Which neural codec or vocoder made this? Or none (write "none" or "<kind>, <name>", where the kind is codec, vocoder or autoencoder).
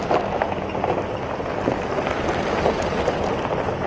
none